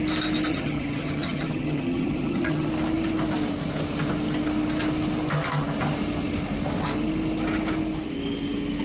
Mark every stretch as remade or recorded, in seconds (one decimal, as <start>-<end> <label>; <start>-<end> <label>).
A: 0.0-0.5 recorded; 0.5-2.7 remade; 2.7-8.8 recorded